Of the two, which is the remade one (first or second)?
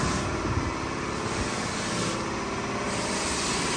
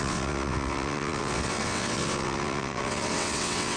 second